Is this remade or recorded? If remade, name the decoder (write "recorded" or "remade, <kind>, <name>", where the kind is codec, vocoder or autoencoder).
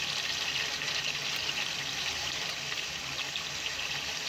recorded